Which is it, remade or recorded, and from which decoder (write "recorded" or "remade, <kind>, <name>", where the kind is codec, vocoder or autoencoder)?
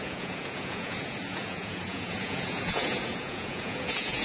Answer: remade, vocoder, Vocos